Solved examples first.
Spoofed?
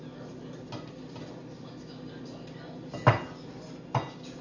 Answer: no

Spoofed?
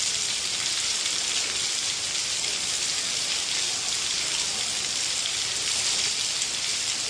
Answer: no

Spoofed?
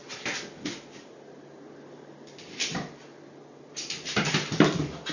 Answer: no